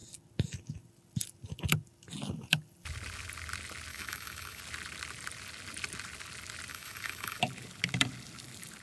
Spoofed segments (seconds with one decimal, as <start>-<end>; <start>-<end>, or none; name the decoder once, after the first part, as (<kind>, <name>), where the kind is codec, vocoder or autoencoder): 3.9-4.6 (autoencoder, DAC-VAE); 6.7-7.4